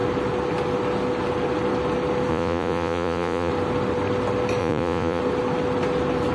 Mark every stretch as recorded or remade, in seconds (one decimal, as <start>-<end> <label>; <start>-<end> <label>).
0.0-2.3 recorded; 2.3-3.5 remade; 3.5-4.6 recorded; 4.6-5.2 remade; 5.2-6.3 recorded